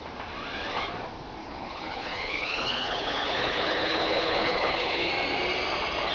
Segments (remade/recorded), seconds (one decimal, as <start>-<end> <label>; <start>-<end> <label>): 0.0-1.4 recorded; 1.4-5.1 remade; 5.1-6.1 recorded